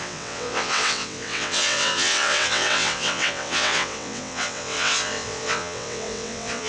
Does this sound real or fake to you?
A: fake